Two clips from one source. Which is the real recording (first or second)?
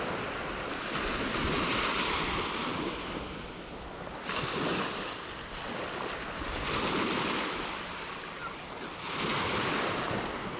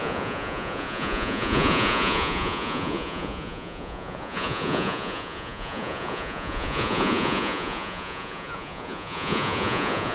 first